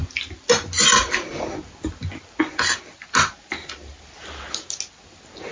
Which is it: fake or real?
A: real